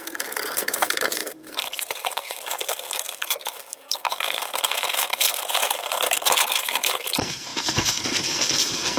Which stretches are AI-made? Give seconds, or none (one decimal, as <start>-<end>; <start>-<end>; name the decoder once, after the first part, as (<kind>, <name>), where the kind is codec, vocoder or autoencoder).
0.0-9.0 (codec, SNAC)